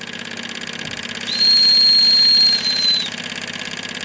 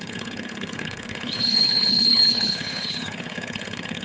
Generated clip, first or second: second